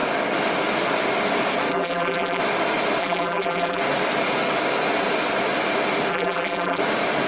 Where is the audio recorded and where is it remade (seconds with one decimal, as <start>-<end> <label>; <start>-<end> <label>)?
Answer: 0.0-1.7 recorded; 1.7-2.4 remade; 2.4-3.0 recorded; 3.0-3.8 remade; 3.8-6.1 recorded; 6.1-6.8 remade; 6.8-7.3 recorded